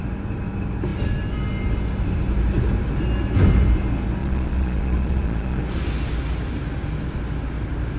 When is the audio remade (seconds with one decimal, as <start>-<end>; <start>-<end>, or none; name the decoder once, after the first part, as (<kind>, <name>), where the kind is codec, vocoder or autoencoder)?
4.2-5.6 (vocoder, Vocos)